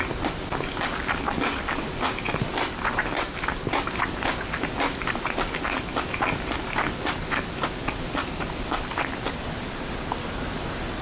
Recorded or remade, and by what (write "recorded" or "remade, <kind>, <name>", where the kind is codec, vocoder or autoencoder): recorded